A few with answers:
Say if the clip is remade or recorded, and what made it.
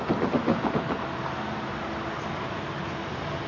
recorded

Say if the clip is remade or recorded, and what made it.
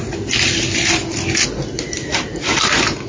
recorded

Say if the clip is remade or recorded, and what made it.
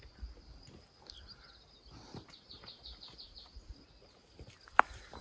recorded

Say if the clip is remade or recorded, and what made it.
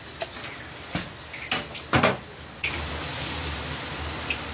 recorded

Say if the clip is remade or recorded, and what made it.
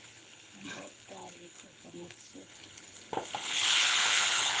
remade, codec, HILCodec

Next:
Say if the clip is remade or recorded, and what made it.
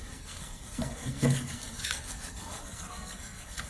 remade, codec, SNAC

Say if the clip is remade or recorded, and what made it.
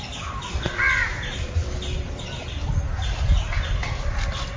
recorded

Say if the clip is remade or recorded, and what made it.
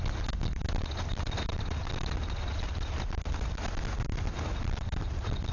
recorded